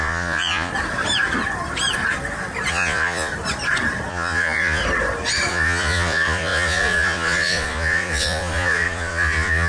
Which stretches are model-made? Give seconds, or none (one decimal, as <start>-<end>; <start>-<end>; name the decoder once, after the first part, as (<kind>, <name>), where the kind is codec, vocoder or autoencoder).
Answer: 0.0-0.7 (vocoder, Vocos); 2.7-3.3; 4.1-4.8; 5.5-9.7